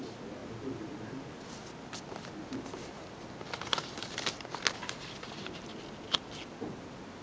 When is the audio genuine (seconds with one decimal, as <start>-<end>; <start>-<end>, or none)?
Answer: 0.0-7.2